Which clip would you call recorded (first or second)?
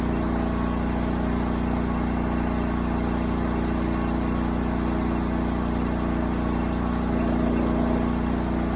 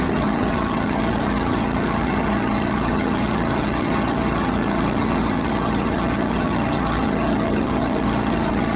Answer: first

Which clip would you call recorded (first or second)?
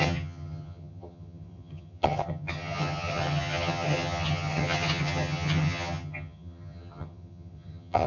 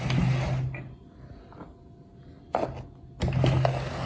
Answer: second